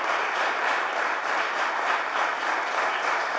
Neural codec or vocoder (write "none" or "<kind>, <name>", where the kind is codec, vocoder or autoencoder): vocoder, BigVGAN v2